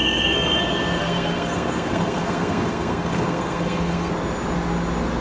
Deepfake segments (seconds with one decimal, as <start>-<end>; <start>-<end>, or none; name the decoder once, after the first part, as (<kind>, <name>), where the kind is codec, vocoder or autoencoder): 0.0-0.6 (codec, SNAC); 1.0-4.1